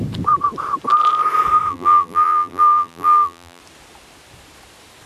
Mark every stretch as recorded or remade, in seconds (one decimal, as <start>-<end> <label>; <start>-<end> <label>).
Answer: 0.0-1.7 recorded; 1.7-3.6 remade; 3.6-5.1 recorded